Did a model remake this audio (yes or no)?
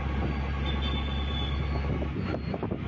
no